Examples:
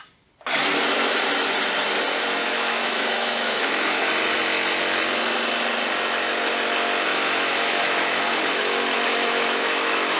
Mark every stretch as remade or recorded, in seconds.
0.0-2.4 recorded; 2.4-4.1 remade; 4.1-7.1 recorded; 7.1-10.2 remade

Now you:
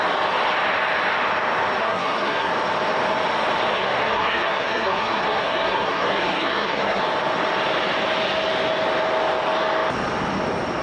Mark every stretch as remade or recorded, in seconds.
0.0-1.8 recorded; 1.8-2.5 remade; 2.5-3.7 recorded; 3.7-7.0 remade; 7.0-10.8 recorded

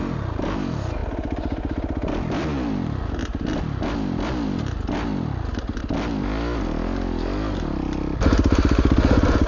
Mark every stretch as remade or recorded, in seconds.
0.0-9.5 recorded

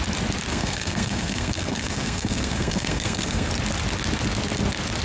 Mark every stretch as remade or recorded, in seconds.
0.0-0.5 recorded; 0.5-3.5 remade; 3.5-5.0 recorded

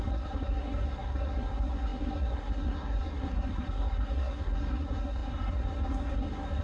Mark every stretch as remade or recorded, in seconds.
0.0-6.6 remade